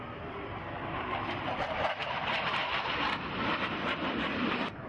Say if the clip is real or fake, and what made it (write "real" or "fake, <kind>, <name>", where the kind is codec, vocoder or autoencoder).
fake, vocoder, BigVGAN v2